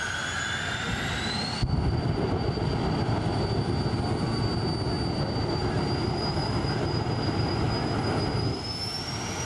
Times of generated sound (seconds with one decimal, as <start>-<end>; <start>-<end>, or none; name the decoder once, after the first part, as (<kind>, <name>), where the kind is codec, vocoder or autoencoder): 5.5-7.5 (vocoder, BigVGAN v2)